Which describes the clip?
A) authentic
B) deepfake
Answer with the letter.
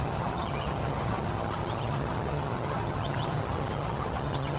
B